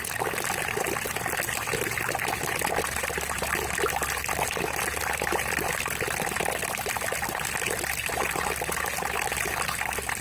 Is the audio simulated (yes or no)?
no